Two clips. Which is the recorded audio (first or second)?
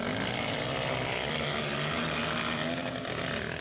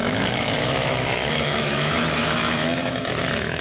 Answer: first